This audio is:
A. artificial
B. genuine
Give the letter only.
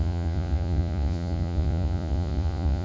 A